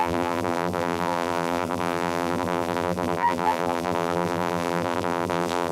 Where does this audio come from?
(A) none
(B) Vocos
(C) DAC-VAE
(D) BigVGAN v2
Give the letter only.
D